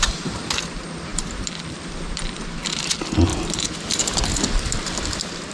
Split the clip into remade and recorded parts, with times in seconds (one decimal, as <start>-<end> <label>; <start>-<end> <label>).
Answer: 0.0-1.1 recorded; 1.1-2.0 remade; 2.0-5.5 recorded